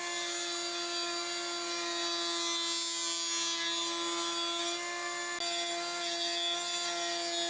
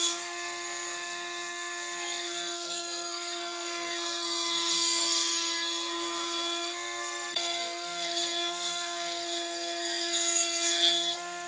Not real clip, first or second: second